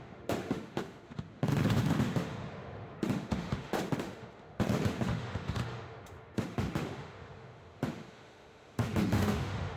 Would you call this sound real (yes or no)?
no